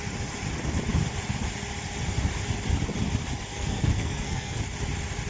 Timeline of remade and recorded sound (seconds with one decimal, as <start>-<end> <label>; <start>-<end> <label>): 0.0-3.5 recorded; 3.5-4.6 remade; 4.6-5.3 recorded